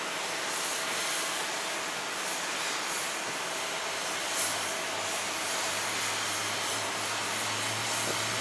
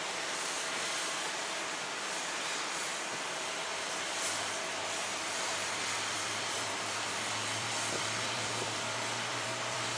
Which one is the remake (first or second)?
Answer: second